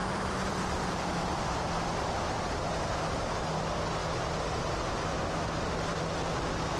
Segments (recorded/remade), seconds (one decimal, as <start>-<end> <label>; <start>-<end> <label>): 0.0-2.9 remade; 2.9-6.8 recorded